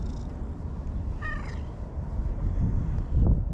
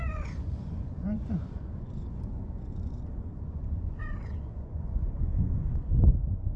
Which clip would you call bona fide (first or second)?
first